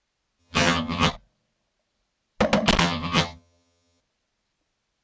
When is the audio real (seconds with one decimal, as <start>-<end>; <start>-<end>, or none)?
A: 0.0-0.4; 1.1-2.8; 4.0-5.0